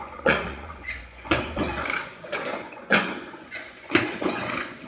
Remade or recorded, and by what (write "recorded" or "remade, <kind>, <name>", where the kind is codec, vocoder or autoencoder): remade, vocoder, Vocos